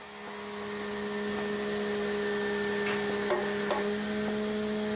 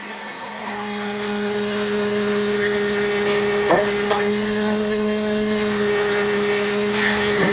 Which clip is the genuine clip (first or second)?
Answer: first